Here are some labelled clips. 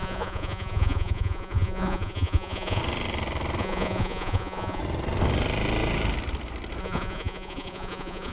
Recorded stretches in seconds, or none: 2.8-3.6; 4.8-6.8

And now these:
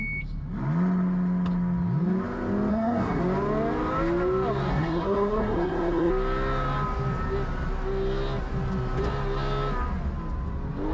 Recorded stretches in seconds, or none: 0.0-2.7; 3.2-4.7; 6.1-10.9

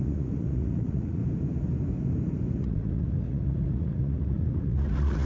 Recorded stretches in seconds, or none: 1.2-2.6

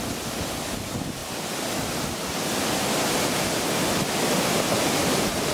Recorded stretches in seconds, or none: 0.0-5.5